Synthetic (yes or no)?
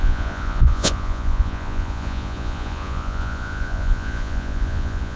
yes